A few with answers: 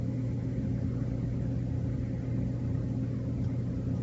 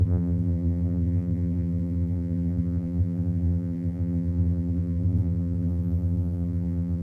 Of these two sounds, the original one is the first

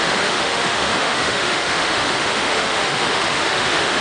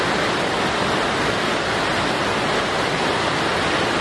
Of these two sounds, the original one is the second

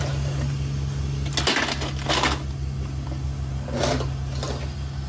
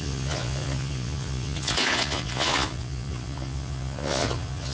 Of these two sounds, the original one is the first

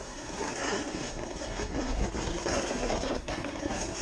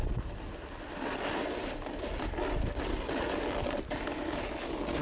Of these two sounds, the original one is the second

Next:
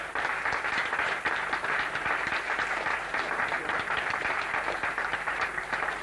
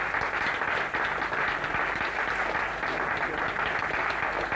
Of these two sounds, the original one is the second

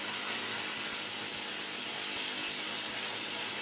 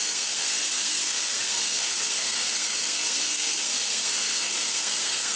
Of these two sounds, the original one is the first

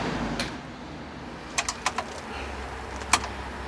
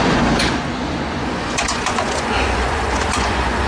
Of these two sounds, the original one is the first